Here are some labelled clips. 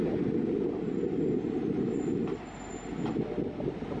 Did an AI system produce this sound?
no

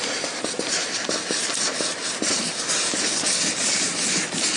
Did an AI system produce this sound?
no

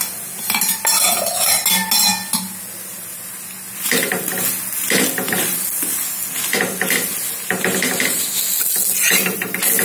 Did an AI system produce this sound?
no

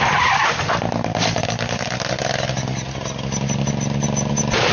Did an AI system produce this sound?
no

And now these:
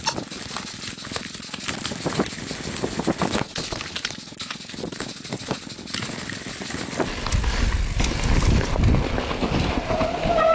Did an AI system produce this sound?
no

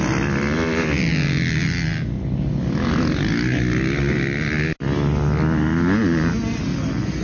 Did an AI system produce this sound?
no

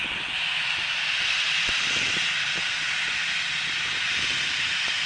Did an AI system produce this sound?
no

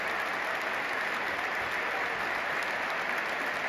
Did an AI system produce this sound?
no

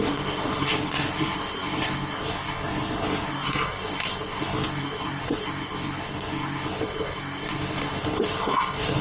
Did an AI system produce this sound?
yes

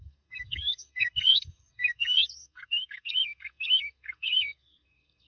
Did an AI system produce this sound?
yes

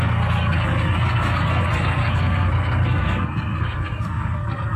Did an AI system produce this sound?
yes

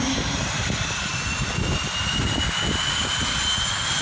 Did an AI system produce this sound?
no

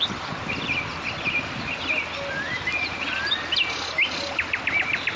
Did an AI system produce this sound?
no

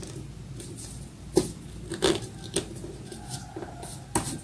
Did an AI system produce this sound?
no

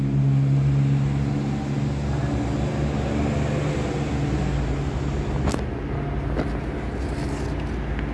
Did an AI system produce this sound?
no